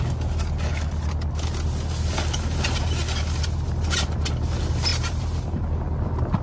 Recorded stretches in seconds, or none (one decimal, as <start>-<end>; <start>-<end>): 0.0-4.9; 5.6-6.4